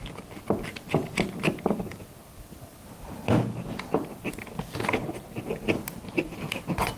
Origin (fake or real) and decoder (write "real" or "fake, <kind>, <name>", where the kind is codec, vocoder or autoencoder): real